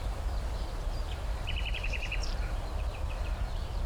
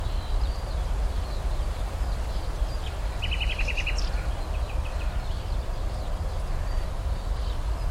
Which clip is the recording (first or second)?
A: second